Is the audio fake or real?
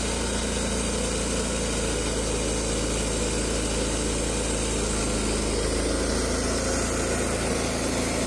real